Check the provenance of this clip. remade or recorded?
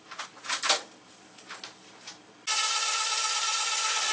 recorded